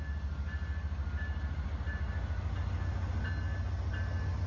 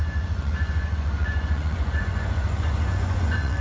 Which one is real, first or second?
first